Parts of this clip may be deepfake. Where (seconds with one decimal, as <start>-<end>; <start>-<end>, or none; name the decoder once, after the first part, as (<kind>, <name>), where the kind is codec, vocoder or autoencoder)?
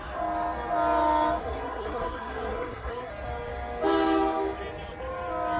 1.4-3.1 (codec, SNAC)